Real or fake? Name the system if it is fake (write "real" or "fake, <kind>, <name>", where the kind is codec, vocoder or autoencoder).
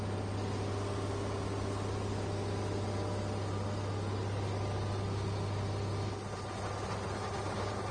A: real